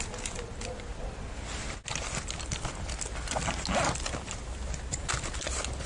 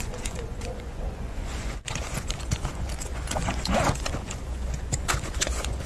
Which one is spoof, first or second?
second